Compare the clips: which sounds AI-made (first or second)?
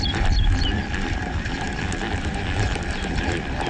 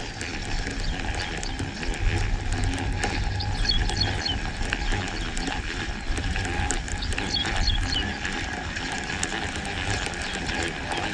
first